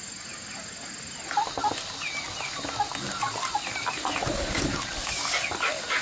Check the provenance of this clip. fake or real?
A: real